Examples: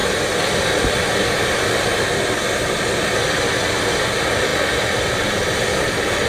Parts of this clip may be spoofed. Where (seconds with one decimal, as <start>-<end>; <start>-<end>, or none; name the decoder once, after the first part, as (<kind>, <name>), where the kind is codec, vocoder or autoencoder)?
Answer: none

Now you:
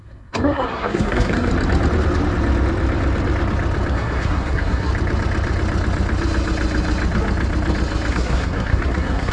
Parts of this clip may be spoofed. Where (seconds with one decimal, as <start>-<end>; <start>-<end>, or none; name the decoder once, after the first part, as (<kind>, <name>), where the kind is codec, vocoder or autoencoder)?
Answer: 0.0-1.5 (codec, SNAC); 3.9-4.9; 8.1-9.3

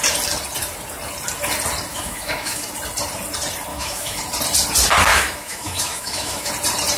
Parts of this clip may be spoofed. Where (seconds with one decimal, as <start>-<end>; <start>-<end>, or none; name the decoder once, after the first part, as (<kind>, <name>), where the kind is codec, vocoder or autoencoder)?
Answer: 1.9-2.6 (autoencoder, DAC-VAE); 3.7-4.2; 5.1-6.5